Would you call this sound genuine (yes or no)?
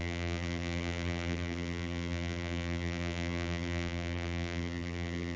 no